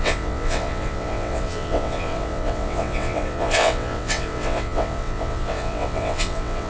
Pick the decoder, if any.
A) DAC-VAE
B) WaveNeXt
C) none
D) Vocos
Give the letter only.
B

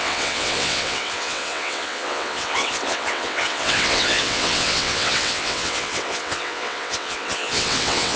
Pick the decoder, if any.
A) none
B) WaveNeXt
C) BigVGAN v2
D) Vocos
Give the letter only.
B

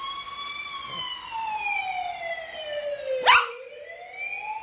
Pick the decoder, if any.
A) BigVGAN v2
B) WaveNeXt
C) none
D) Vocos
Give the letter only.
C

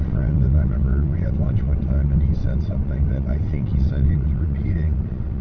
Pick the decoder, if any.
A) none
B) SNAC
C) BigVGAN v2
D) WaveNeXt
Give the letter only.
D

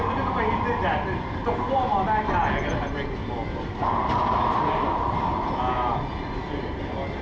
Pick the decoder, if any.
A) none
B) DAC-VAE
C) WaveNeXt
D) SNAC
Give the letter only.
A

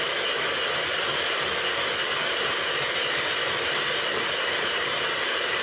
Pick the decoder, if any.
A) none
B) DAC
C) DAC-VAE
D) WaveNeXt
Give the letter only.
A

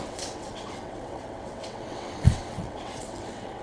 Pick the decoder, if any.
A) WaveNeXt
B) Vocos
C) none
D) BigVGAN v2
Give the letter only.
A